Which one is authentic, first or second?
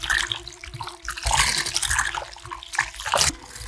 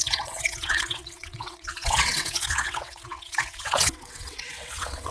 first